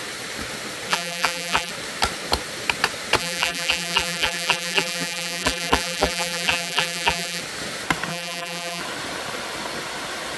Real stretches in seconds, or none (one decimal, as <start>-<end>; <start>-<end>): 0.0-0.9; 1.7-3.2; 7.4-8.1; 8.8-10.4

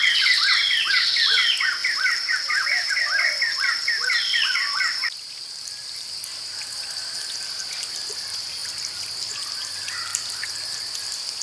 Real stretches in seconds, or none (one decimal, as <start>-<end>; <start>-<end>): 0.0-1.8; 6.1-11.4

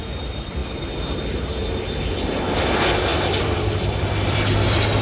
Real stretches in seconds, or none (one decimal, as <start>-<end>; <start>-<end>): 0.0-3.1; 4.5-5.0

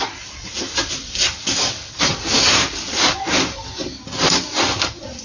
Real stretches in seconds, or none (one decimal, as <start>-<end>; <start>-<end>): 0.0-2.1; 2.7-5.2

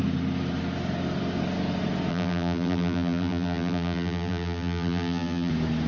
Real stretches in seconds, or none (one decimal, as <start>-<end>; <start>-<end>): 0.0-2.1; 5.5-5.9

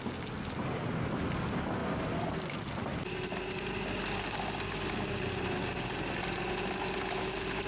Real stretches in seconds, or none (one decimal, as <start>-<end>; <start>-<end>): 0.0-7.7

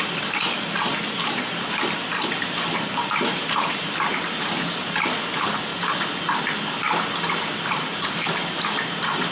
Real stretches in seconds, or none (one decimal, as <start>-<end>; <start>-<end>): 5.7-7.8